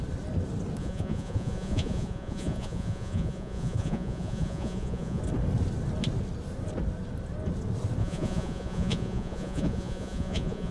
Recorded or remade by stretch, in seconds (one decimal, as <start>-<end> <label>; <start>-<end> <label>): 0.0-0.8 recorded; 0.8-5.2 remade; 5.2-8.0 recorded; 8.0-10.7 remade